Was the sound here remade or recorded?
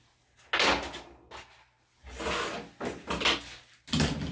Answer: recorded